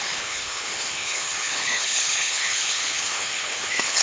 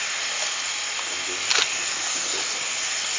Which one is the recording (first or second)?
second